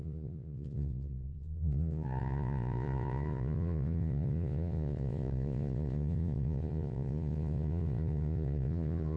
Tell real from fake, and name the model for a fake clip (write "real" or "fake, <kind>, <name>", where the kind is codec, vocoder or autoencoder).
fake, vocoder, Vocos